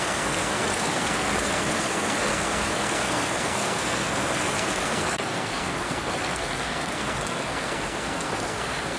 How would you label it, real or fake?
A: fake